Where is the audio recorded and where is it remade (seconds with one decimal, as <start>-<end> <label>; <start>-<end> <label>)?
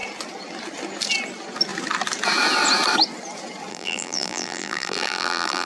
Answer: 0.0-3.7 recorded; 3.7-5.7 remade